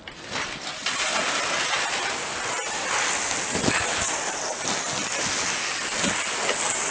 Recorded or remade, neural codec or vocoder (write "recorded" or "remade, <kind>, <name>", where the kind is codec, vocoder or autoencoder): recorded